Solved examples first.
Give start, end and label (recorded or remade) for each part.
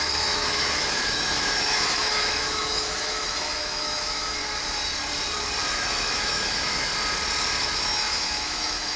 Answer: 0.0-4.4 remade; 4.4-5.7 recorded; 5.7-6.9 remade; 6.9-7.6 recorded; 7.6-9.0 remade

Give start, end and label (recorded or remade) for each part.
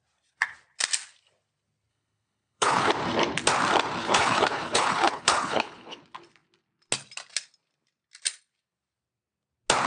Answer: 0.0-1.9 recorded; 1.9-2.9 remade; 2.9-4.0 recorded; 4.0-6.0 remade; 6.0-9.9 recorded